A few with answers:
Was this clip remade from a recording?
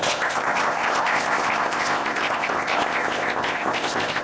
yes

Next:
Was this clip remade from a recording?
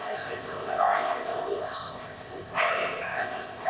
yes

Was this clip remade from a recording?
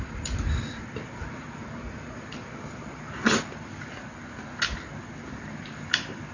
no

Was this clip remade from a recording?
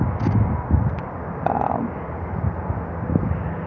no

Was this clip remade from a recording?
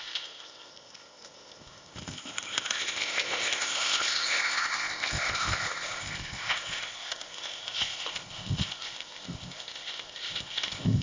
yes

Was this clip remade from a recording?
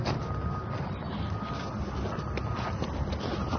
no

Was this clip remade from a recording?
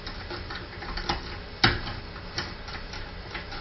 no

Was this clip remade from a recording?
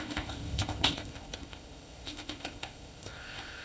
yes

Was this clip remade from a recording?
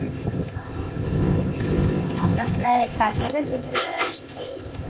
yes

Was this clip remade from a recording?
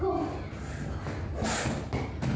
no